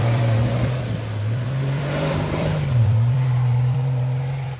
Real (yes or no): no